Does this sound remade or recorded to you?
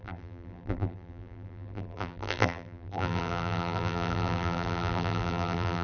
remade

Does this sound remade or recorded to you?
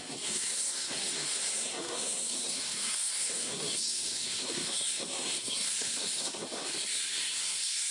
remade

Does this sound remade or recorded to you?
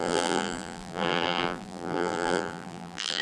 remade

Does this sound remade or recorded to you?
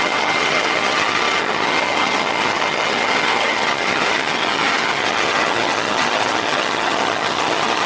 remade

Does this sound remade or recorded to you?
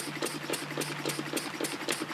recorded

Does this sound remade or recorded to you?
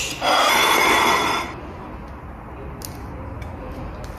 recorded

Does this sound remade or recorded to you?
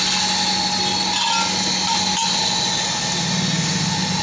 recorded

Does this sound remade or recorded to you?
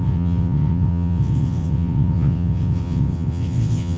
remade